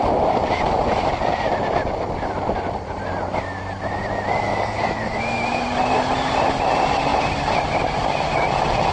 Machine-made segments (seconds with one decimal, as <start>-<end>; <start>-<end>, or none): 4.5-5.2